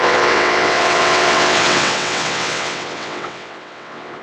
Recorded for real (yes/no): no